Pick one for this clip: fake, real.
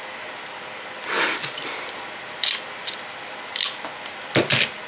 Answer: real